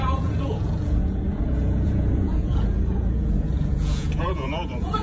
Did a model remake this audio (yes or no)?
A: yes